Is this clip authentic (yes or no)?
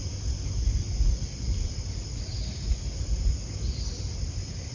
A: yes